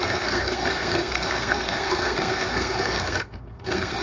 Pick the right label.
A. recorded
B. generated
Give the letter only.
B